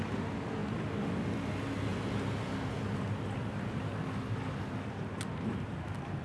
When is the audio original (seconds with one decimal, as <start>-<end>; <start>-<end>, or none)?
0.0-6.2